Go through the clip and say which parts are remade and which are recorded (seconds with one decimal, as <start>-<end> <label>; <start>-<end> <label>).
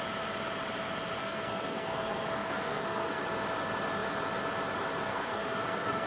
0.0-1.2 recorded; 1.2-3.2 remade; 3.2-5.1 recorded; 5.1-6.1 remade